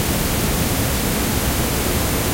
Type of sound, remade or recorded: recorded